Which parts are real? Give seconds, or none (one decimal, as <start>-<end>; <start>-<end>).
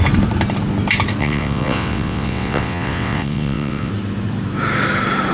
0.0-1.2; 3.9-5.3